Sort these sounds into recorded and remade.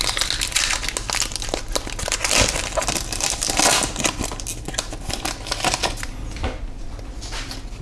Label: recorded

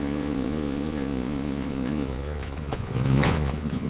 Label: remade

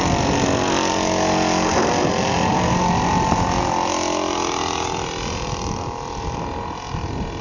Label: recorded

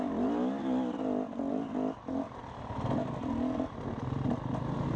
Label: recorded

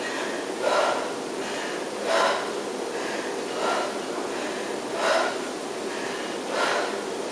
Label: recorded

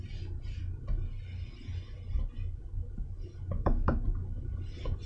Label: recorded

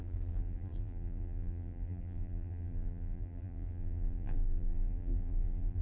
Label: remade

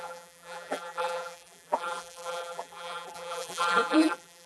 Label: remade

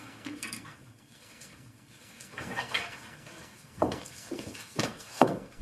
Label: remade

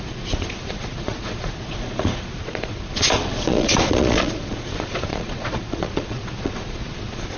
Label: remade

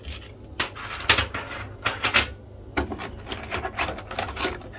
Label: recorded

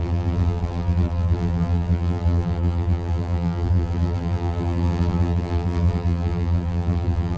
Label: remade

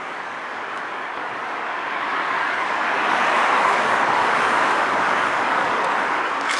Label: remade